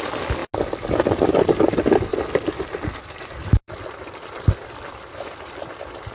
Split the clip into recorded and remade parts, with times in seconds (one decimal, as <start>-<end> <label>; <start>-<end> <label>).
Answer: 0.0-2.1 recorded; 2.1-5.1 remade; 5.1-6.1 recorded